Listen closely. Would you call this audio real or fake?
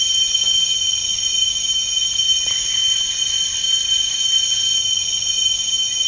real